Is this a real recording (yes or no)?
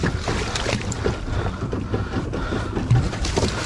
yes